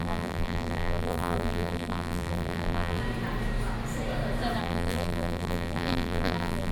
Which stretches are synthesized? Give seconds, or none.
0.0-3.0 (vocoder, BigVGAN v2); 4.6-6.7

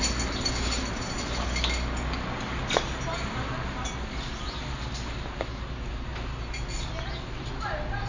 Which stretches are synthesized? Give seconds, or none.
none